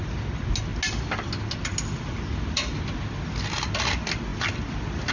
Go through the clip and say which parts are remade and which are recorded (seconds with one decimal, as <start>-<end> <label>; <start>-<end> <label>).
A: 0.0-5.1 recorded